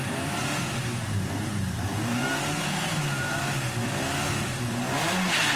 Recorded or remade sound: remade